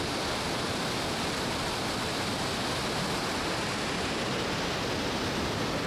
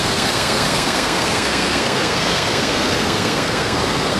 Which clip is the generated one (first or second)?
second